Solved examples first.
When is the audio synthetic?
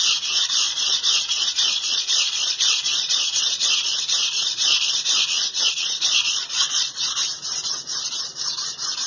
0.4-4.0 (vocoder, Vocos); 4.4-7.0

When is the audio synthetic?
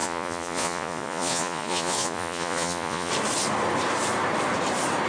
0.0-3.1 (vocoder, Vocos)